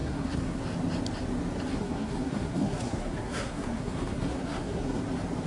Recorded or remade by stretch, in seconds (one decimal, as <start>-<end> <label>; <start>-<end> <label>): 0.0-0.6 remade; 0.6-1.7 recorded; 1.7-5.0 remade; 5.0-5.5 recorded